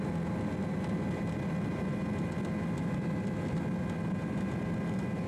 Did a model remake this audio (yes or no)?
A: no